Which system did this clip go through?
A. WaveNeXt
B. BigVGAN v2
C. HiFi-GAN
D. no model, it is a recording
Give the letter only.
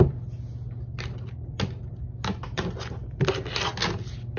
D